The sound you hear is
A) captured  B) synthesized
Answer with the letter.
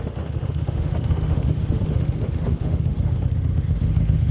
B